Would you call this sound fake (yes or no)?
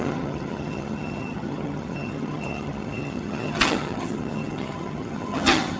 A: yes